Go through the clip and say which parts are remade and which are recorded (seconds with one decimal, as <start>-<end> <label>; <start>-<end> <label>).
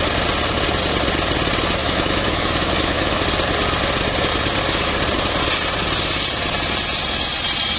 0.0-1.8 recorded; 1.8-3.2 remade; 3.2-7.8 recorded